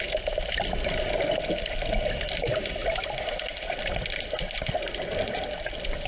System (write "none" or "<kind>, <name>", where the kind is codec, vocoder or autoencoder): none